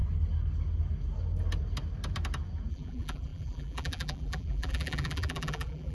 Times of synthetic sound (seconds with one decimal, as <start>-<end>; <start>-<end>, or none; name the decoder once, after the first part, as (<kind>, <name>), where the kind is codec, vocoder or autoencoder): 2.7-5.9 (vocoder, BigVGAN v2)